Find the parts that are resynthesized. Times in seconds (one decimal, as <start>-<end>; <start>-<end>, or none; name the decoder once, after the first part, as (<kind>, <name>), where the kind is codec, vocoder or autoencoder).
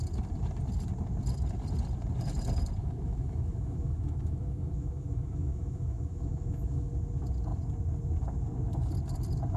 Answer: 2.8-6.9 (autoencoder, DAC-VAE)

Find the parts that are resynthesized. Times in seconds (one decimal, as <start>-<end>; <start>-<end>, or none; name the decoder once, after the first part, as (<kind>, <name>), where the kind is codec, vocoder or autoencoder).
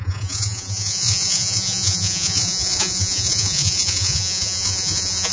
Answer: 0.0-5.3 (vocoder, Vocos)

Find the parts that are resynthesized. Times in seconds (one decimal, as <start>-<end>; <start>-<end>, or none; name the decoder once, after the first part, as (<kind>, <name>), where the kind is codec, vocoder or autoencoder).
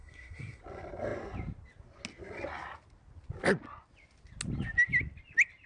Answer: 0.0-0.6 (codec, SNAC)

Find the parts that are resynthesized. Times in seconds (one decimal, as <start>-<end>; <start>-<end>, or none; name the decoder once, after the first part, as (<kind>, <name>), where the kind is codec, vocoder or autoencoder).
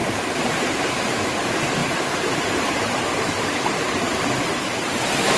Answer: 0.0-0.7 (vocoder, BigVGAN v2); 1.8-5.0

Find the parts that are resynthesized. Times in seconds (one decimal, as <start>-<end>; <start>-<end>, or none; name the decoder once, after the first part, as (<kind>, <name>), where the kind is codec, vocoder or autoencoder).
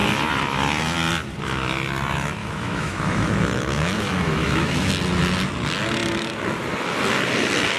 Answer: 2.4-4.9 (autoencoder, DAC-VAE)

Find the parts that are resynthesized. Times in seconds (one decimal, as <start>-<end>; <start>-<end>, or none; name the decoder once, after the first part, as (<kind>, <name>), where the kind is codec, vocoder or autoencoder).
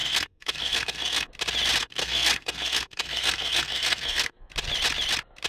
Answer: 0.0-1.3 (codec, SNAC); 1.8-4.5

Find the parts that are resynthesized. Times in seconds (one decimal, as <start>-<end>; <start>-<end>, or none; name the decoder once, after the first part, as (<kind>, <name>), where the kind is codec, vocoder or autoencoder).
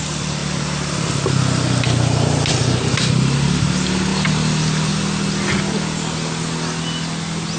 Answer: none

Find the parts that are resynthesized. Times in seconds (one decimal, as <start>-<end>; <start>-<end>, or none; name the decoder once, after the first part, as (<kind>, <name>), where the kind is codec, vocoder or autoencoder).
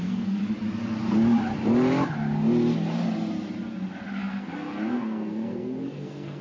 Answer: 0.0-0.4 (codec, SNAC); 4.2-6.4